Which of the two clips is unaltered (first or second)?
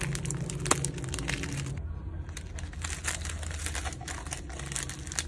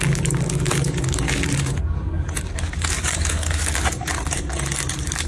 first